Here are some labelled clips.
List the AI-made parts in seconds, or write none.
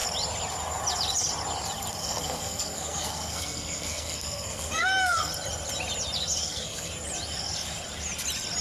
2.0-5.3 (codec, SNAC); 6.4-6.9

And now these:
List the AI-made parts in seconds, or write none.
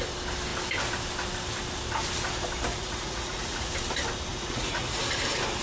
2.7-3.7 (vocoder, Vocos); 4.3-5.0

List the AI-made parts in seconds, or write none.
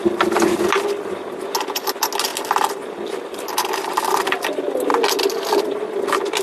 0.0-0.6 (vocoder, BigVGAN v2); 2.3-4.2; 4.9-5.6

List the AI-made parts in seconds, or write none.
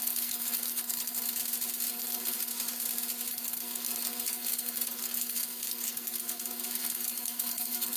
0.0-1.4 (codec, SNAC); 1.9-2.5; 3.3-8.0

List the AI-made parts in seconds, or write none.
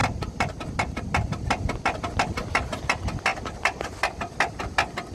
none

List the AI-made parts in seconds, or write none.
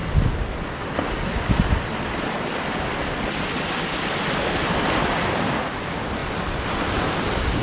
none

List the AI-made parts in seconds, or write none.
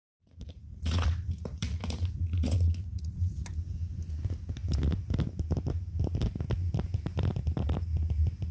0.0-3.4 (vocoder, Vocos)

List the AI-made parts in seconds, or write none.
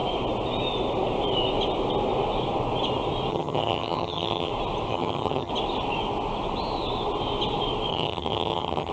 3.3-4.5 (vocoder, HiFi-GAN); 4.9-5.5; 7.9-8.9